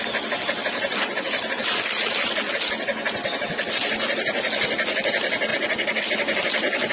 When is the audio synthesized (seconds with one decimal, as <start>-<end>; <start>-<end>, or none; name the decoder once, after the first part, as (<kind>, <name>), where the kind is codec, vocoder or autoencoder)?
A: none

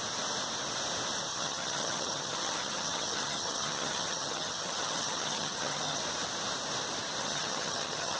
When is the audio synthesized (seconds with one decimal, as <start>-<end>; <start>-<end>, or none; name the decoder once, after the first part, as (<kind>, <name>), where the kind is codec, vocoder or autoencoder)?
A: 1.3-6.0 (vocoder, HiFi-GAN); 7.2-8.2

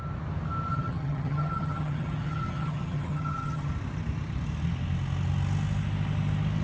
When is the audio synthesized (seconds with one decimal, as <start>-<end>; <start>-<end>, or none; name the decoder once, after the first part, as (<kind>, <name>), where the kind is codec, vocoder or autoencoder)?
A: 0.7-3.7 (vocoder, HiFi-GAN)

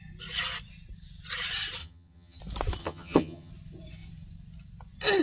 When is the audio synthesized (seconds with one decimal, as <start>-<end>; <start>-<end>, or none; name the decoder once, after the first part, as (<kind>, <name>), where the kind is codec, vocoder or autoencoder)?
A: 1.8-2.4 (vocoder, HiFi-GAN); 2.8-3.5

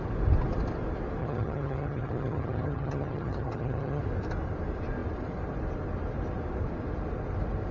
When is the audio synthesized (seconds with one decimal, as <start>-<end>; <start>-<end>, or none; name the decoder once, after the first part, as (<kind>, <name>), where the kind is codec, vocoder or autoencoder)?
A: 1.2-4.0 (vocoder, HiFi-GAN)

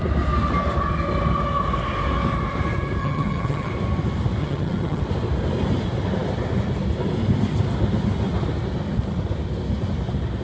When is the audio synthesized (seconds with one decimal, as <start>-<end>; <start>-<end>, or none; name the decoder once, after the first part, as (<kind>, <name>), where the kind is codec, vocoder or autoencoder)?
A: 3.0-3.7 (vocoder, HiFi-GAN); 4.4-5.0